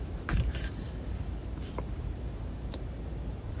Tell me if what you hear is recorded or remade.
remade